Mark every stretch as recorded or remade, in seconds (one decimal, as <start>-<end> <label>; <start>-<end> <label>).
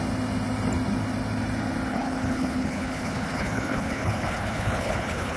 0.0-1.9 recorded; 1.9-5.4 remade